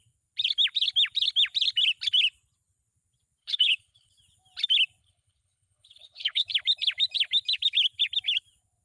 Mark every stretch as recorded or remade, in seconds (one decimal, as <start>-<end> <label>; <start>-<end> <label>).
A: 0.0-3.4 recorded; 3.4-4.1 remade; 4.1-5.0 recorded; 5.0-6.5 remade; 6.5-8.8 recorded